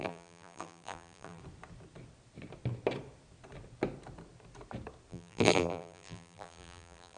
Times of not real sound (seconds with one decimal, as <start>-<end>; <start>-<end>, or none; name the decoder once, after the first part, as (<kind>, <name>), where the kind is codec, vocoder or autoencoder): 0.0-1.4 (vocoder, BigVGAN v2); 5.1-7.2